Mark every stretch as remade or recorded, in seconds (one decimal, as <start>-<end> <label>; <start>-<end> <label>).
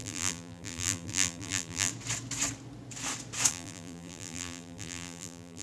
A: 0.0-1.9 remade; 1.9-3.5 recorded; 3.5-5.6 remade